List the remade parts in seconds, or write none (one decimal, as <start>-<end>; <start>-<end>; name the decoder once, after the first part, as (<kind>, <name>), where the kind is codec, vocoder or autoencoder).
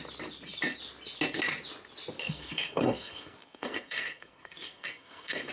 2.2-5.5 (codec, SNAC)